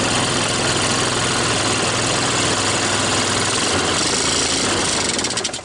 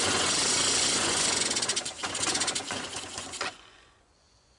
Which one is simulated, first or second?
second